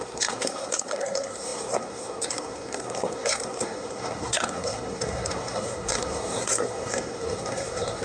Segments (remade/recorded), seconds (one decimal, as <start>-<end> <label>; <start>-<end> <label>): 0.0-8.0 remade